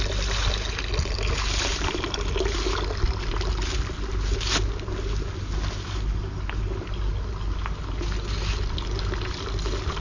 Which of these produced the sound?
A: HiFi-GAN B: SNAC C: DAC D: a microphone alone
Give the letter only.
D